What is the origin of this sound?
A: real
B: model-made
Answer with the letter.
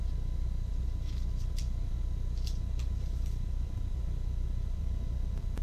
B